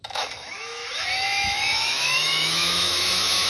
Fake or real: fake